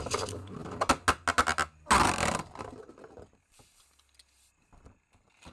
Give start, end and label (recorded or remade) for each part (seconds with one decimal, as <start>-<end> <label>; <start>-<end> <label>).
0.0-5.5 recorded